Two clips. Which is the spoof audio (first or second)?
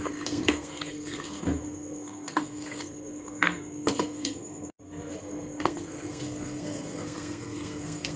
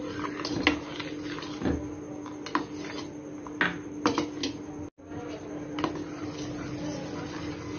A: first